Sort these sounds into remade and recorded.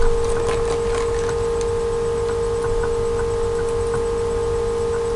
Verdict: recorded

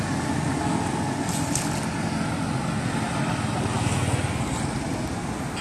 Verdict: recorded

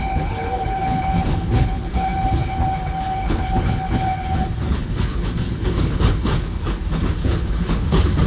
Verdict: remade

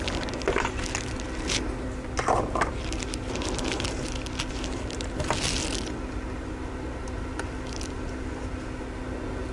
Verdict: recorded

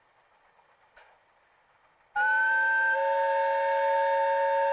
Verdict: recorded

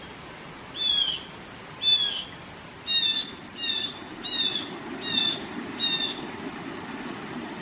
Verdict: recorded